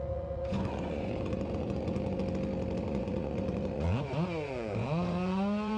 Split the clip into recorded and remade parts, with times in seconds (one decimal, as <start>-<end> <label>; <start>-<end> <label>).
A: 0.0-2.2 remade; 2.2-2.8 recorded; 2.8-5.8 remade